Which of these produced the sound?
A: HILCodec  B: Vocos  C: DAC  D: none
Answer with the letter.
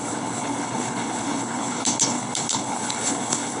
A